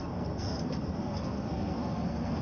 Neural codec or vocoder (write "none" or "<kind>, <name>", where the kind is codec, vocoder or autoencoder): codec, SNAC